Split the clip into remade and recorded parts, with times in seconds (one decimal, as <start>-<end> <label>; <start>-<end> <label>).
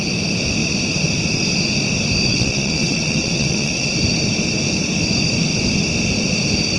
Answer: 0.0-2.3 recorded; 2.3-3.9 remade; 3.9-6.8 recorded